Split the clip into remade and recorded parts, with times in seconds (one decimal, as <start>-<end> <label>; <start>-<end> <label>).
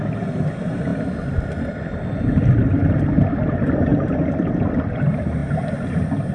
0.0-0.9 recorded; 0.9-1.4 remade; 1.4-3.9 recorded; 3.9-5.0 remade; 5.0-6.3 recorded